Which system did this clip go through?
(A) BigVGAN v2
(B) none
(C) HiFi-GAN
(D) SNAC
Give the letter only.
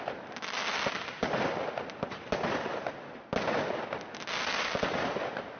B